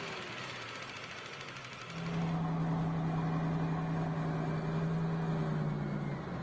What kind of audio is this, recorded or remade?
recorded